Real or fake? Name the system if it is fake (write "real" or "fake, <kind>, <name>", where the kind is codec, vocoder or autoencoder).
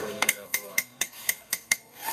fake, codec, SNAC